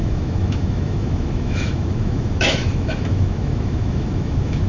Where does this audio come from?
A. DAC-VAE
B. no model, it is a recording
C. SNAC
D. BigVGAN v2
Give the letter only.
A